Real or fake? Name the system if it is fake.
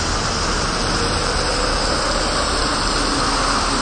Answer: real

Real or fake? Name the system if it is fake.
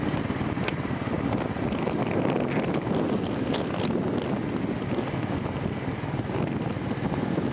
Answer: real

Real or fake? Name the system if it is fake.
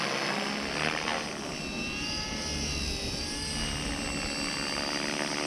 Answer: real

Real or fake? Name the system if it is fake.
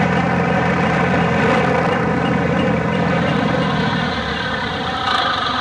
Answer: fake, vocoder, BigVGAN v2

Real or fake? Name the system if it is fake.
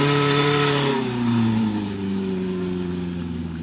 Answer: fake, vocoder, BigVGAN v2